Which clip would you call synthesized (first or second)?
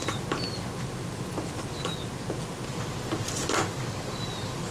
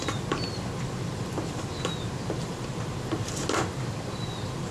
second